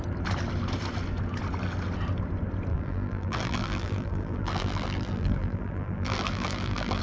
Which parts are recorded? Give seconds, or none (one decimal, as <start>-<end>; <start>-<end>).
0.0-2.7